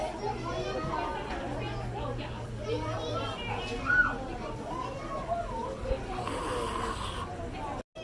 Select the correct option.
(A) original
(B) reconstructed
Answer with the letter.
A